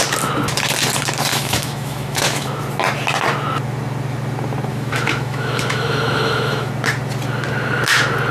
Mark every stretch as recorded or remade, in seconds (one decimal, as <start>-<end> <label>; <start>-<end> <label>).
0.0-1.3 recorded; 1.3-2.6 remade; 2.6-4.7 recorded; 4.7-6.7 remade; 6.7-8.3 recorded